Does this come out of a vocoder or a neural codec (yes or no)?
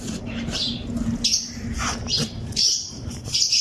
yes